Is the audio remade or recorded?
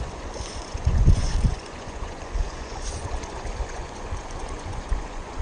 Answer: remade